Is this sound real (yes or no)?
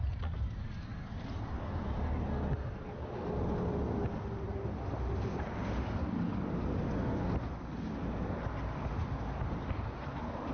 yes